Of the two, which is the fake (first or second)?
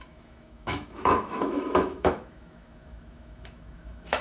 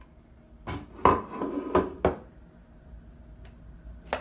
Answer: first